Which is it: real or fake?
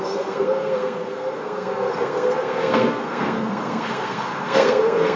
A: fake